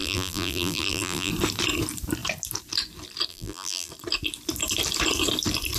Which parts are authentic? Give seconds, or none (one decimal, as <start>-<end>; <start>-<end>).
1.3-3.3; 3.9-5.8